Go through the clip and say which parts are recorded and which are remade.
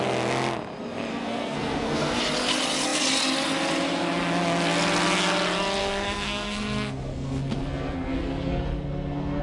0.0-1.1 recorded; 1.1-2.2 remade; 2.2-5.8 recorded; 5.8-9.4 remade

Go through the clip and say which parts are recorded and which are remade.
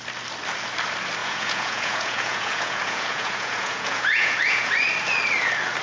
0.0-1.2 recorded; 1.2-4.7 remade; 4.7-5.8 recorded